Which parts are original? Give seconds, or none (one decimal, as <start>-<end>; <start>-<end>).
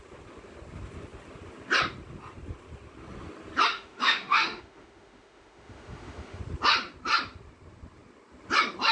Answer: 0.0-3.7; 6.4-8.9